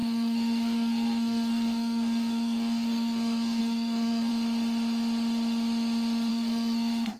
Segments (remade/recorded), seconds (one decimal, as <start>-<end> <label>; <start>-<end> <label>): 0.0-4.3 remade; 4.3-6.3 recorded; 6.3-7.2 remade